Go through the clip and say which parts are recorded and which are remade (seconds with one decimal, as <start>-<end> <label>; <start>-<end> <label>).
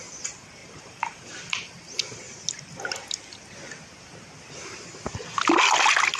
0.0-0.6 recorded; 0.6-1.7 remade; 1.7-6.2 recorded